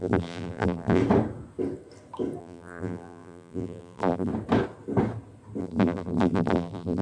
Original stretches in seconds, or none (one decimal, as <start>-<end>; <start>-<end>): 1.0-2.4; 4.3-5.6